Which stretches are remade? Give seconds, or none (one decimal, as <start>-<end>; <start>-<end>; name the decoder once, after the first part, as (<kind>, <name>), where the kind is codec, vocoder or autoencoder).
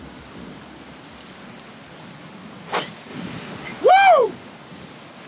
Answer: 3.1-3.9 (vocoder, BigVGAN v2)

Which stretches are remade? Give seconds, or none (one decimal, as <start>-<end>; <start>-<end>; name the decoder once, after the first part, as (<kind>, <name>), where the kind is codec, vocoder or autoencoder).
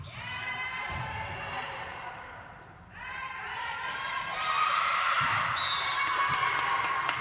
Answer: 0.0-7.2 (vocoder, BigVGAN v2)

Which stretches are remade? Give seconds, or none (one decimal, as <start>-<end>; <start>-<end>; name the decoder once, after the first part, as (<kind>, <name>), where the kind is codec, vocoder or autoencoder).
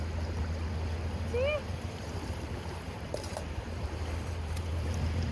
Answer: 1.7-5.3 (vocoder, BigVGAN v2)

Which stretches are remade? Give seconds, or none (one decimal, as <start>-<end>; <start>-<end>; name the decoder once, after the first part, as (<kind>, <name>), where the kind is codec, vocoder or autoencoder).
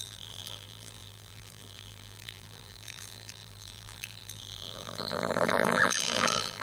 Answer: 0.0-6.6 (vocoder, BigVGAN v2)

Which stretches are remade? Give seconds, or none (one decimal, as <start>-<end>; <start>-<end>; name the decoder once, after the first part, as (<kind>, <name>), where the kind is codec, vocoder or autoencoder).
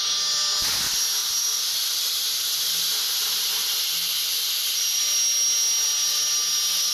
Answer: 1.2-2.6 (vocoder, BigVGAN v2); 3.6-5.0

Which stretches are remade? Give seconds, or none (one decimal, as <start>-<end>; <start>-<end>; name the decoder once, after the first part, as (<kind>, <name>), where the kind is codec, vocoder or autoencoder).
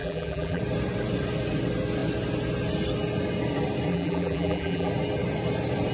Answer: 0.0-0.6 (vocoder, BigVGAN v2); 3.9-4.9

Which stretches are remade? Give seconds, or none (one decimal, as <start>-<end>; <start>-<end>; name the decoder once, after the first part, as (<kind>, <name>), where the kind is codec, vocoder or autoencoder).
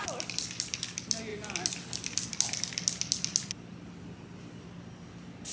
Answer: none